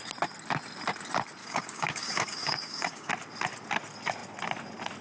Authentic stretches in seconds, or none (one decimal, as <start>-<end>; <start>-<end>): 0.0-1.4; 3.1-5.0